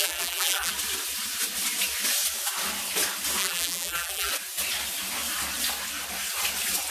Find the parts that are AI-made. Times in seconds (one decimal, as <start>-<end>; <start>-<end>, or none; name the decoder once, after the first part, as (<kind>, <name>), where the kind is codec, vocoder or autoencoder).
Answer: 0.0-0.7 (vocoder, BigVGAN v2); 3.4-4.3